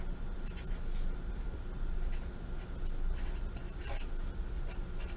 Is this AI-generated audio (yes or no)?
no